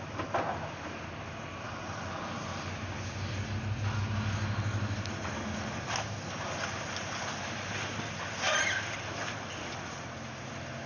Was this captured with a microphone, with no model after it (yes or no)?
yes